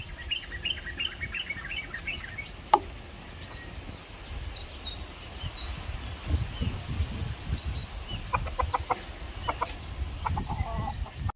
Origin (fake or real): real